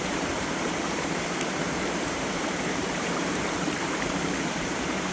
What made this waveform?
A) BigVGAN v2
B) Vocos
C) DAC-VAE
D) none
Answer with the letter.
A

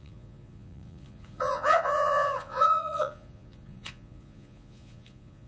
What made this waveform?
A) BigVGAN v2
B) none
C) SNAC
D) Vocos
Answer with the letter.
D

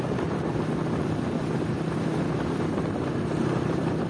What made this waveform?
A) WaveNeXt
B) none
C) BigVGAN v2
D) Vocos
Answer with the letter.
B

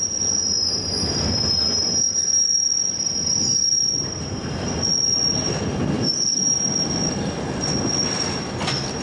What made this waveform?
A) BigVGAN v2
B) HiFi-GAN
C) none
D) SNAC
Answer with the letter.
C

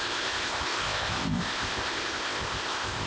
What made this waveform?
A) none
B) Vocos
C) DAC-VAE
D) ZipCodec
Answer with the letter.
D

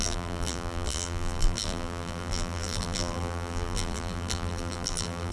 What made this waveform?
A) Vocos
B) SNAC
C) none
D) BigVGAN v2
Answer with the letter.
D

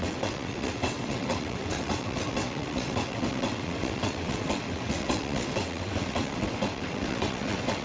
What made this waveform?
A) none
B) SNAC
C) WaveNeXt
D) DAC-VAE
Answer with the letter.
C